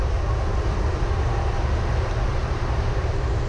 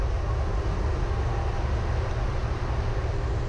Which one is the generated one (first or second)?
first